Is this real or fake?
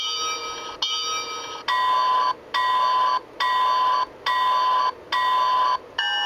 real